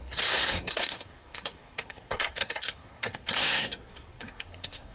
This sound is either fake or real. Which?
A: fake